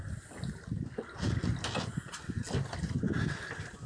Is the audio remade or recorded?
recorded